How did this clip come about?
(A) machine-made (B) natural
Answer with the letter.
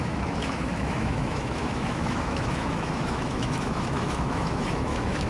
A